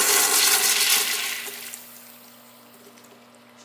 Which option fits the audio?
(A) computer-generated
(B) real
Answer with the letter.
B